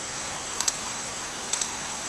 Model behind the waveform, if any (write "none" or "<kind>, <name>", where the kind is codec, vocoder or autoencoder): codec, SNAC